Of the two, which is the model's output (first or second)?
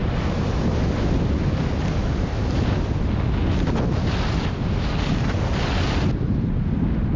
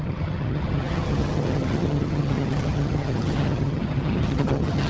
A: second